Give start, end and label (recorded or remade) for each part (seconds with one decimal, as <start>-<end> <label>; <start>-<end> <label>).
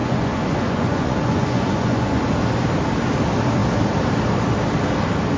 0.0-2.2 remade; 2.2-5.4 recorded